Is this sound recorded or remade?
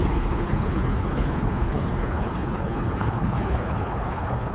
remade